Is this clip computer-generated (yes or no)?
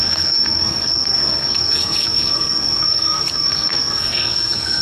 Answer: yes